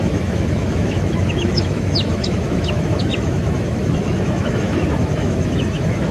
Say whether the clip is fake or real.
fake